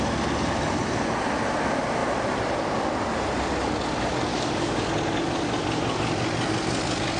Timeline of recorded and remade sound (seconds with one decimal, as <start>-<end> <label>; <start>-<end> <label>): 0.0-4.3 recorded; 4.3-4.8 remade; 4.8-7.2 recorded